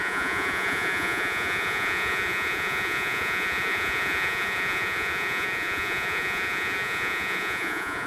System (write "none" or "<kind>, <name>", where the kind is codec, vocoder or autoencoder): vocoder, Vocos